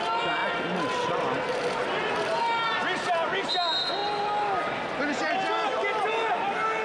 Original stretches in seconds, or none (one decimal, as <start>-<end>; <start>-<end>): 0.0-6.8